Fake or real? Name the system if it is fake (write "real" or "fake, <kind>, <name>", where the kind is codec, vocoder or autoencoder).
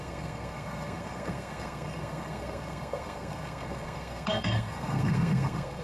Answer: fake, codec, SNAC